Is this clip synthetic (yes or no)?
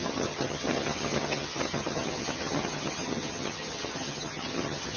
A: yes